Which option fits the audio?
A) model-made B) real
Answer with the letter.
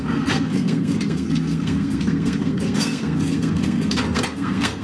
A